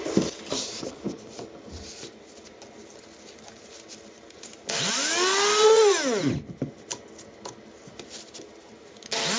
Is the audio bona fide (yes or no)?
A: yes